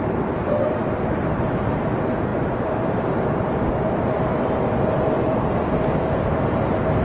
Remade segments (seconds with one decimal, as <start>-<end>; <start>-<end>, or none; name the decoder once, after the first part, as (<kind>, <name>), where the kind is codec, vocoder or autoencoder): 0.8-1.6 (vocoder, BigVGAN v2); 2.3-6.1